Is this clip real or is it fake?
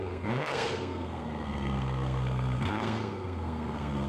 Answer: fake